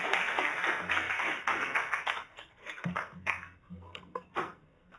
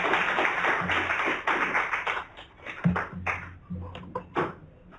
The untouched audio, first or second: second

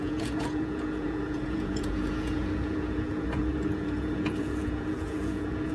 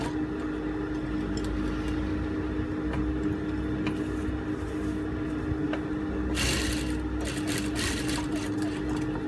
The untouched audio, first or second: second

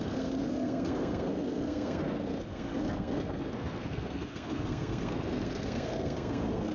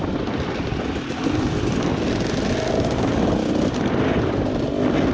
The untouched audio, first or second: second